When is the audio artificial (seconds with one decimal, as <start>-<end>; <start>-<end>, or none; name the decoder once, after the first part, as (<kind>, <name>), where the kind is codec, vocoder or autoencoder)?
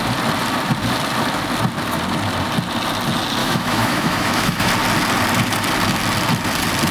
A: 3.4-4.7 (autoencoder, DAC-VAE)